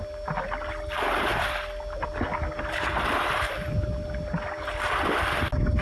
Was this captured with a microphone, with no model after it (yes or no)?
yes